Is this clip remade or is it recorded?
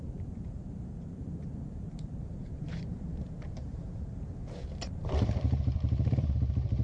remade